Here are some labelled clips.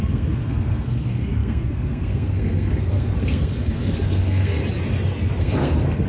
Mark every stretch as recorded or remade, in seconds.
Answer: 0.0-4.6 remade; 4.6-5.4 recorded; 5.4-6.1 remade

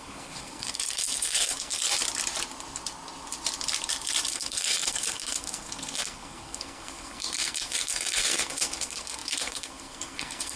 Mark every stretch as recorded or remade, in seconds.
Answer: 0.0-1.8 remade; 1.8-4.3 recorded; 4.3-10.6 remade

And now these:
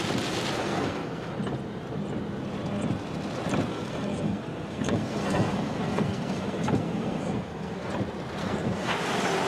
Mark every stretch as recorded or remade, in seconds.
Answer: 0.0-0.6 recorded; 0.6-1.3 remade; 1.3-3.7 recorded; 3.7-7.9 remade; 7.9-8.4 recorded; 8.4-8.9 remade; 8.9-9.5 recorded